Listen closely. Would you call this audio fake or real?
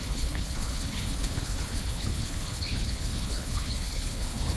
fake